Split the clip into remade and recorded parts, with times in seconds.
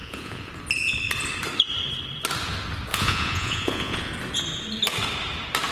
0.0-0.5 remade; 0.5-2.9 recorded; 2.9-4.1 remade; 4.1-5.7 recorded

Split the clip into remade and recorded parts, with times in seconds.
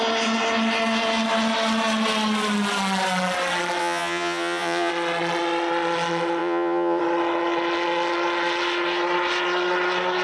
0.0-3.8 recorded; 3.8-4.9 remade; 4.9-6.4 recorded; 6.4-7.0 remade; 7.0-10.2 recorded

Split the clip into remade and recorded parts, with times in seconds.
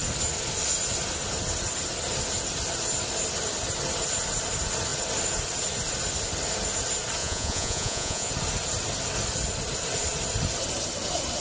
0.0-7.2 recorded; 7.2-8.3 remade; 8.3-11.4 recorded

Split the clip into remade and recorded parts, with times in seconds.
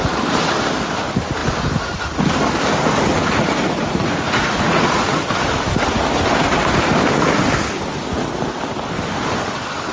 0.0-3.1 recorded; 3.1-5.2 remade; 5.2-9.9 recorded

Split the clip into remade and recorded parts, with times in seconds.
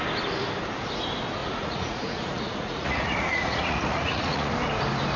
0.0-1.4 recorded; 1.4-4.5 remade; 4.5-5.2 recorded